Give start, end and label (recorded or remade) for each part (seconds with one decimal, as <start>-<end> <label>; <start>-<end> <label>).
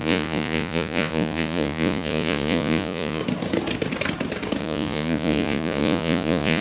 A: 0.0-3.2 remade; 3.2-4.6 recorded; 4.6-6.6 remade